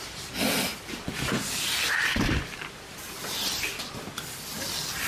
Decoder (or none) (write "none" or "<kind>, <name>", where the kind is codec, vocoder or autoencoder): none